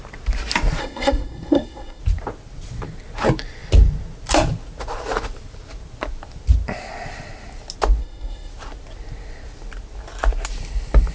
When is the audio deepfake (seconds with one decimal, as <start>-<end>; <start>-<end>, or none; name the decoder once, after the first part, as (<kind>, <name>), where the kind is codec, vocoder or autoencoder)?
0.8-2.0 (codec, SNAC); 8.0-8.5